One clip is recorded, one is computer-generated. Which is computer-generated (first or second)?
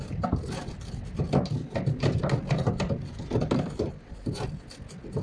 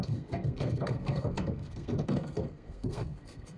second